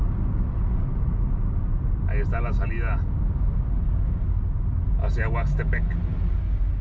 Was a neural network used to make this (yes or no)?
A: no